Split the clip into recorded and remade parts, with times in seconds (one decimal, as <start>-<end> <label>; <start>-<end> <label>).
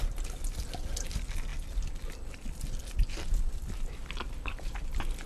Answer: 0.0-5.3 recorded